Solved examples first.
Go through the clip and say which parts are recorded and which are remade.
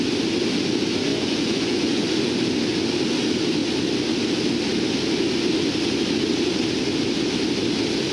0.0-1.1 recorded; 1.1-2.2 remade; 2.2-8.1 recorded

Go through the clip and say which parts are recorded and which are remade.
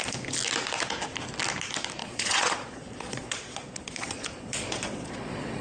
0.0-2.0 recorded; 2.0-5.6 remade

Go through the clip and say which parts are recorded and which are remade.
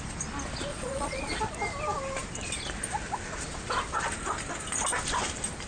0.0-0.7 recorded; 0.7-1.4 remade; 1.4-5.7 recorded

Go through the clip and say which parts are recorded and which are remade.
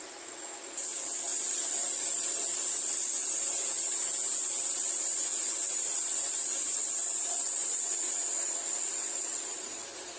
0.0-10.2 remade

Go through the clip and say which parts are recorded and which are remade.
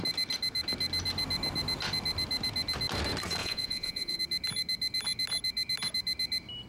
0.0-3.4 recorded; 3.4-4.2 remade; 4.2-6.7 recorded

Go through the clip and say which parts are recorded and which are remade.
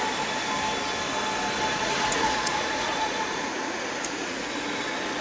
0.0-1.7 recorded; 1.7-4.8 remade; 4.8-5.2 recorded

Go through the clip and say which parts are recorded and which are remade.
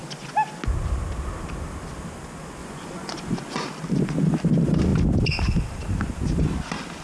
0.0-2.6 recorded; 2.6-3.7 remade; 3.7-7.0 recorded